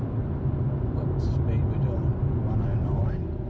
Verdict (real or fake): real